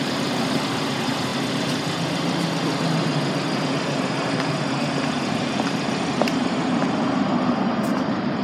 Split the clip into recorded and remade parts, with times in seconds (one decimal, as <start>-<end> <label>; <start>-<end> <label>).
0.0-6.8 remade; 6.8-7.9 recorded; 7.9-8.4 remade